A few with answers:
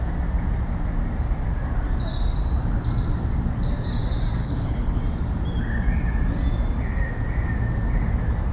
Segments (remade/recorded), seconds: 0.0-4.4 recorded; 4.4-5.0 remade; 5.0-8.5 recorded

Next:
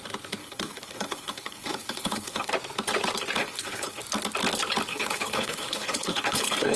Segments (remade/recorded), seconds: 0.0-0.4 recorded; 0.4-2.5 remade; 2.5-3.4 recorded; 3.4-4.0 remade; 4.0-4.9 recorded; 4.9-6.8 remade

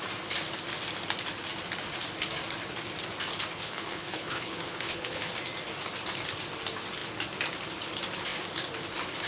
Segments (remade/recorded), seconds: 0.0-3.5 recorded; 3.5-5.3 remade; 5.3-9.3 recorded